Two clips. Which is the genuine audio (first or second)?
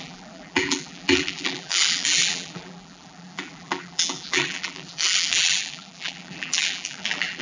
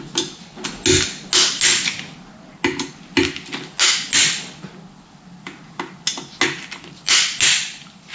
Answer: second